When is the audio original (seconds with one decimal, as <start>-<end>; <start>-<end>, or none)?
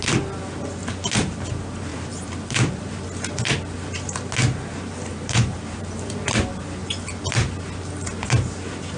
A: 0.0-1.9; 3.0-5.1; 6.3-9.0